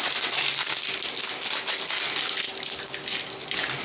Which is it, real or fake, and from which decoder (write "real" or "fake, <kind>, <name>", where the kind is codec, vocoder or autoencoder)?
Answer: real